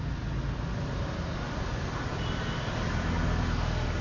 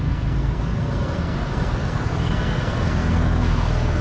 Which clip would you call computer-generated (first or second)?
second